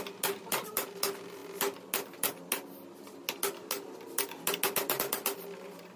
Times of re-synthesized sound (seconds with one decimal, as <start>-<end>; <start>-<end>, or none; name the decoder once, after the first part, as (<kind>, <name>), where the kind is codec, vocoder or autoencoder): none